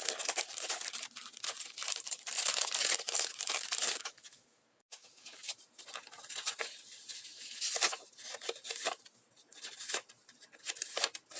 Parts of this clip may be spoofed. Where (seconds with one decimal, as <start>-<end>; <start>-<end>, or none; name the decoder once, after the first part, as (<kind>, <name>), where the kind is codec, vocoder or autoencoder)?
4.0-5.5 (codec, DAC)